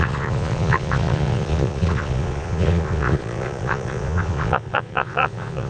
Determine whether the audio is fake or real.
fake